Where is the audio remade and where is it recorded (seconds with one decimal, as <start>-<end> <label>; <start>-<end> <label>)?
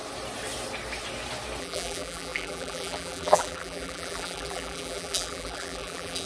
0.0-1.6 recorded; 1.6-6.3 remade